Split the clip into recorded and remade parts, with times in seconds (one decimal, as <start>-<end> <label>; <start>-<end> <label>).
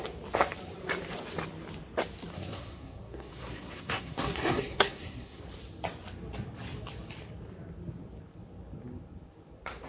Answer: 0.0-2.3 recorded; 2.3-5.4 remade; 5.4-9.9 recorded